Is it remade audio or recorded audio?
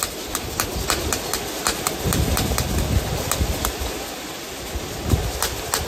recorded